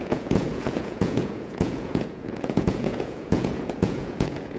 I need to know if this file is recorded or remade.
remade